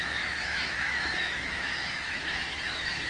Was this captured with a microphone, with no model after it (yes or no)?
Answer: no